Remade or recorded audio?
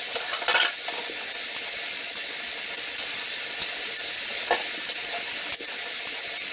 recorded